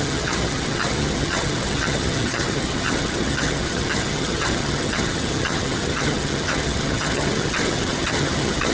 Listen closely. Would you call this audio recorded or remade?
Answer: remade